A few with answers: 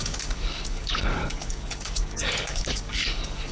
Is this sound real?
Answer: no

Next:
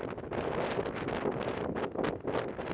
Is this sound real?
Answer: yes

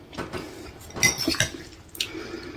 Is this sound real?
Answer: yes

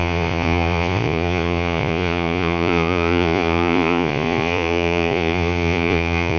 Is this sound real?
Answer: no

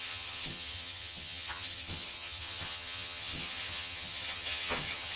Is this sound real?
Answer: no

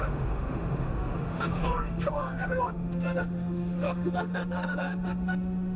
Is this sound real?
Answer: no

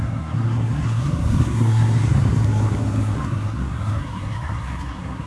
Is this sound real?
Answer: no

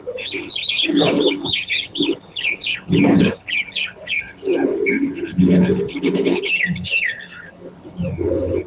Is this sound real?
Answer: no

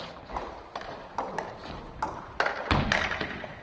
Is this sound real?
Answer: yes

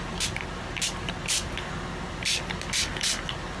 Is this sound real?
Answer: yes